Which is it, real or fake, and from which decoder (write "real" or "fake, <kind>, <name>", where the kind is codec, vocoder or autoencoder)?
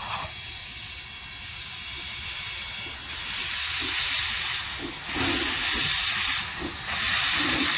real